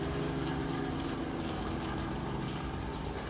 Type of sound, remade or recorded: remade